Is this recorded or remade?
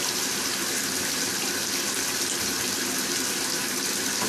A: recorded